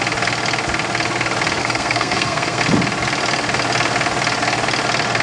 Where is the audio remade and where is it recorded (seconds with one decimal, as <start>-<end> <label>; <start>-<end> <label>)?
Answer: 0.0-1.6 recorded; 1.6-2.6 remade; 2.6-5.2 recorded